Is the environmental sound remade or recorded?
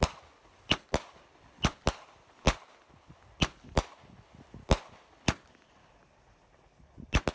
recorded